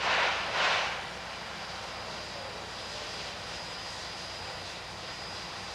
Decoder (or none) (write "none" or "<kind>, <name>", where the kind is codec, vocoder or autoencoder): none